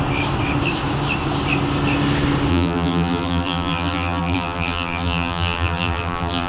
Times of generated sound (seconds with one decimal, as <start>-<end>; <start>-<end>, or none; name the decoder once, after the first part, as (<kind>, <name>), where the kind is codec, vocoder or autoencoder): 2.5-6.5 (vocoder, BigVGAN v2)